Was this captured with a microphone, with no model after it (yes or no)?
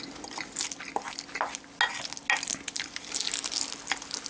yes